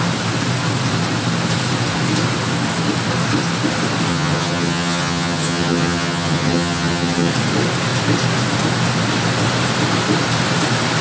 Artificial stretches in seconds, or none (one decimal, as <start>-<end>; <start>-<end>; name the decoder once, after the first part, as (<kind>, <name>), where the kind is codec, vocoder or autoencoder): 4.1-7.3 (vocoder, HiFi-GAN)